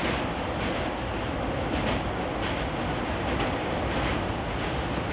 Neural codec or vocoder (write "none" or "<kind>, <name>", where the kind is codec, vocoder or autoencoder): none